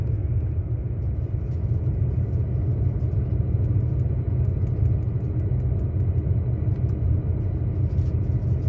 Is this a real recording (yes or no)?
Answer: yes